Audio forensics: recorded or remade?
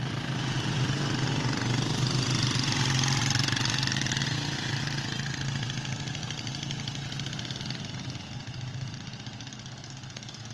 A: recorded